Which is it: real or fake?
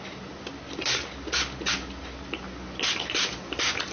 real